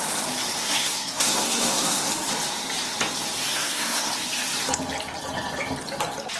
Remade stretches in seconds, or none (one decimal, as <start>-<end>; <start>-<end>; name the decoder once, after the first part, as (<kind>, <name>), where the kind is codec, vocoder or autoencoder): 0.6-2.1 (codec, SNAC); 3.5-4.1